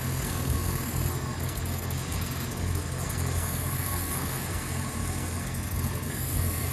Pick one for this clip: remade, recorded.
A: remade